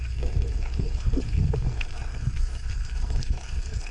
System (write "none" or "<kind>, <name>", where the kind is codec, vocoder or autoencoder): codec, SNAC